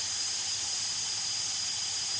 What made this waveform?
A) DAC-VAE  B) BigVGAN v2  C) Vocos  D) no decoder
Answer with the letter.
D